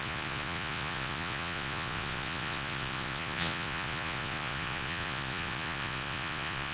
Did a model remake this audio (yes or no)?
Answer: yes